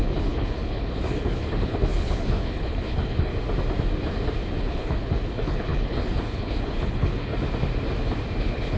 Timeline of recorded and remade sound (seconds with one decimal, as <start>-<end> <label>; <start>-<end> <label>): 0.0-3.3 remade; 3.3-4.6 recorded; 4.6-7.3 remade; 7.3-8.4 recorded; 8.4-8.8 remade